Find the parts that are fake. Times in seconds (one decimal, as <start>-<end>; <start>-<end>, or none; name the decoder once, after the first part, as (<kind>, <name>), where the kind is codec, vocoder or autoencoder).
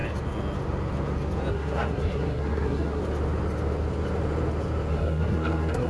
1.5-3.0 (codec, SNAC); 4.9-5.9